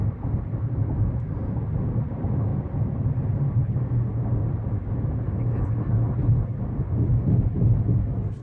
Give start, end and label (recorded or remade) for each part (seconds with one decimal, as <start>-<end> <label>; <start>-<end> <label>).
0.0-8.4 recorded